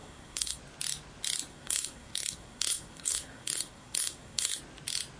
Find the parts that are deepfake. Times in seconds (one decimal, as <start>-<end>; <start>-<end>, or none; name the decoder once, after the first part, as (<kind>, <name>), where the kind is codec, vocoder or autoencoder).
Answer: 0.0-0.6 (codec, SNAC); 1.5-4.6